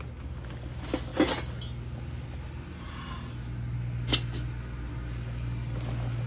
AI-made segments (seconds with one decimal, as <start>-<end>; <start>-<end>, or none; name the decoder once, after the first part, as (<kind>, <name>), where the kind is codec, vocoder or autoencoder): none